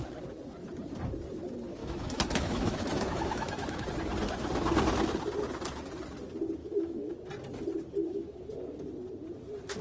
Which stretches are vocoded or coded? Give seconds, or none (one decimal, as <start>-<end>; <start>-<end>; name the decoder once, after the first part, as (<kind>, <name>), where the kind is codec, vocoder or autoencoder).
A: 1.8-3.9 (autoencoder, DAC-VAE); 6.6-7.1; 8.0-8.5